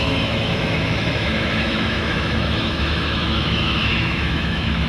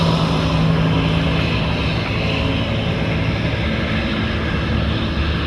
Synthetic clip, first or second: first